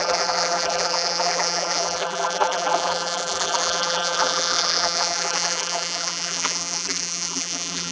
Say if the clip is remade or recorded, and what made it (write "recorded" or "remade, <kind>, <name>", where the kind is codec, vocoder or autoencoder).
remade, vocoder, BigVGAN v2